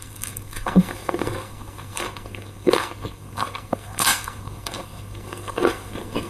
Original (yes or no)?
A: no